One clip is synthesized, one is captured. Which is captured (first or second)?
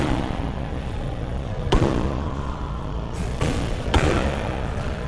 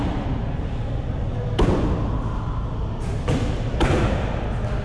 second